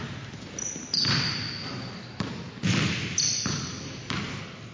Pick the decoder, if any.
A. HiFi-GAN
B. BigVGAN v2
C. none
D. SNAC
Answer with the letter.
C